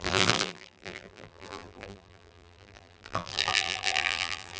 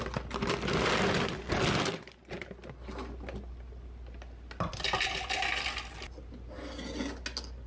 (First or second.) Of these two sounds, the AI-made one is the first